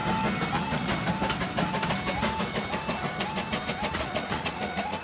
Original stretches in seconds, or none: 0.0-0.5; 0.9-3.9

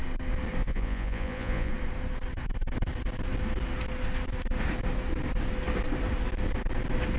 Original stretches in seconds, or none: 0.0-0.6; 1.7-7.2

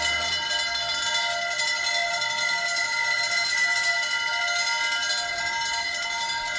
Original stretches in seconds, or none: 0.0-6.6

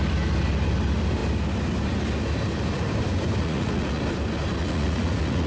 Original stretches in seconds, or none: 0.0-3.4; 4.0-4.6

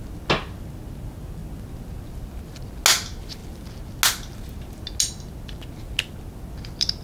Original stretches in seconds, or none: 0.0-7.0

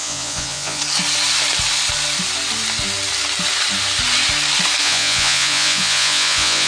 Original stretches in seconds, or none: 0.8-4.8

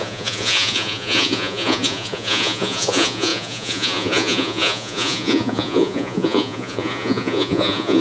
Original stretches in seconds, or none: none